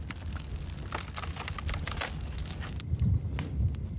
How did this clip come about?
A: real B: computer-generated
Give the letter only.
A